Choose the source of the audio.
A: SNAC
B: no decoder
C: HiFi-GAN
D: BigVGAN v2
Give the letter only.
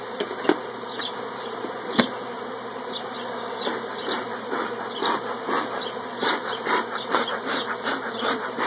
D